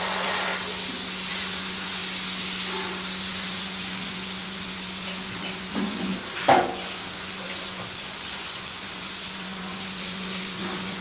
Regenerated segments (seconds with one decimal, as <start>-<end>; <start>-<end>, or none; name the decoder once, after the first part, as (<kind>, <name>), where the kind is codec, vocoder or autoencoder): 0.0-0.5 (vocoder, Vocos); 1.3-2.0; 3.2-11.0